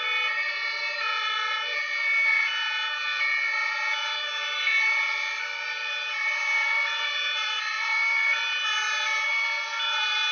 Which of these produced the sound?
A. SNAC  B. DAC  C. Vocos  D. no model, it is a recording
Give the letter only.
D